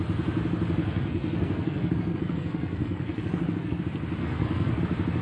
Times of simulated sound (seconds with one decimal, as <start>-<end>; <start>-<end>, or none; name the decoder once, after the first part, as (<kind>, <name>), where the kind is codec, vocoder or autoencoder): 0.8-3.8 (codec, SNAC); 4.2-4.8